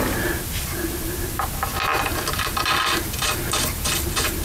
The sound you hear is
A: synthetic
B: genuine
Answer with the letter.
B